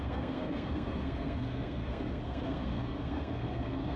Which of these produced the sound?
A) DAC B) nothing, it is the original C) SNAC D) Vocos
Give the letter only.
C